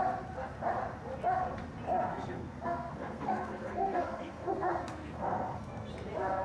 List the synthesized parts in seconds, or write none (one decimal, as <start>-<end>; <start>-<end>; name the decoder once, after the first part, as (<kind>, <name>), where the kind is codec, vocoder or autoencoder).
2.1-5.9 (codec, SNAC)